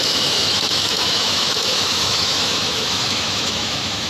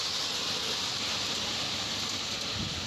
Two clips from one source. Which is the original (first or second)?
second